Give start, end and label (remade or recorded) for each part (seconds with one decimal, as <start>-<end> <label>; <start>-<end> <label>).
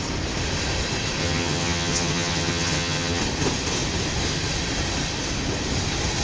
0.0-1.2 recorded; 1.2-3.2 remade; 3.2-6.2 recorded